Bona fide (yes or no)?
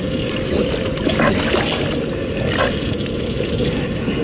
yes